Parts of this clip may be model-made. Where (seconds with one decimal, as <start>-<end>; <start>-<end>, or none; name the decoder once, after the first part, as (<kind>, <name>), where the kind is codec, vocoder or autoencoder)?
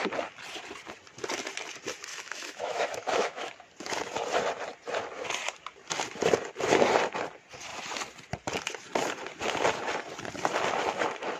2.1-3.5 (autoencoder, DAC-VAE)